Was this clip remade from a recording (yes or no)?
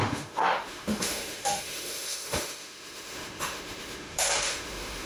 yes